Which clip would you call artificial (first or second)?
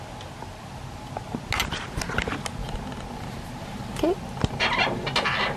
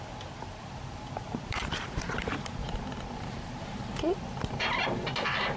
second